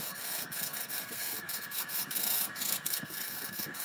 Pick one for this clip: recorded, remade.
remade